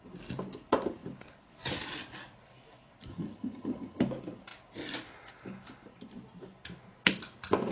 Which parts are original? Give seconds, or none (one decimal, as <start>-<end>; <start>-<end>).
0.0-3.1; 4.0-7.7